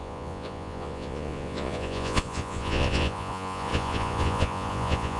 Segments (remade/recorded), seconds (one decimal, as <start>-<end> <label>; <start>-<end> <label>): 0.0-5.2 remade